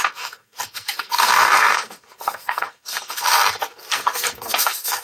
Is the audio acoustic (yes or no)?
no